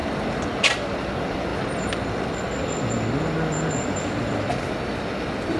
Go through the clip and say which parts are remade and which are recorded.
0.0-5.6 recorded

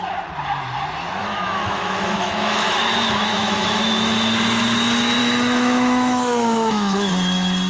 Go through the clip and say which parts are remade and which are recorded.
0.0-1.2 recorded; 1.2-2.9 remade; 2.9-3.3 recorded; 3.3-4.1 remade; 4.1-5.2 recorded; 5.2-7.1 remade; 7.1-7.7 recorded

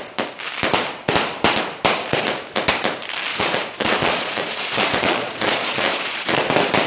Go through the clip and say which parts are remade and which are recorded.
0.0-3.3 recorded; 3.3-6.4 remade; 6.4-6.9 recorded

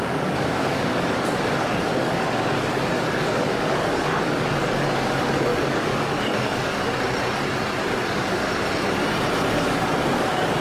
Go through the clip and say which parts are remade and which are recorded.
0.0-6.7 remade; 6.7-7.8 recorded; 7.8-8.4 remade; 8.4-9.5 recorded; 9.5-10.6 remade